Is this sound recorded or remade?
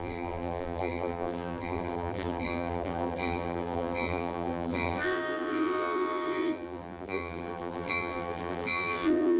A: remade